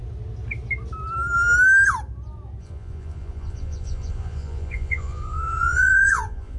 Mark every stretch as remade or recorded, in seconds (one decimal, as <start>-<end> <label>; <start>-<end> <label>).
0.0-2.6 recorded; 2.6-6.6 remade